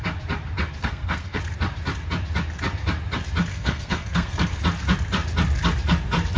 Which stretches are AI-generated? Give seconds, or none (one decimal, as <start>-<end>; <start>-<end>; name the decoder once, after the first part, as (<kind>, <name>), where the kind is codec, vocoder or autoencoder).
0.8-1.4 (codec, SNAC); 3.5-4.6